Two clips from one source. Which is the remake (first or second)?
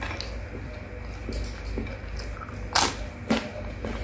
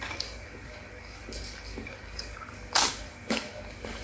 second